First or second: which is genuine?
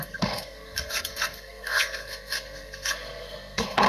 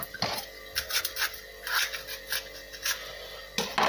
second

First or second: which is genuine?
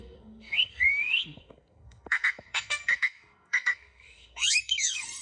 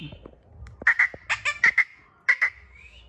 second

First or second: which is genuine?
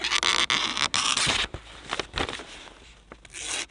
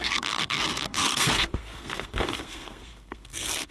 first